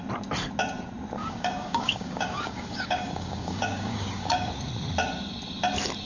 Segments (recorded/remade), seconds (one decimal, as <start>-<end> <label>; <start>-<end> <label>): 0.0-1.2 recorded; 1.2-4.5 remade; 4.5-6.0 recorded